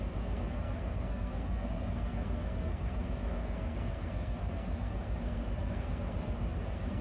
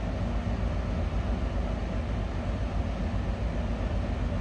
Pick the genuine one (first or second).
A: second